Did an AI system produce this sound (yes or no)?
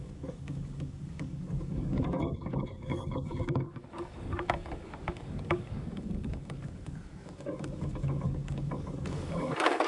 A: yes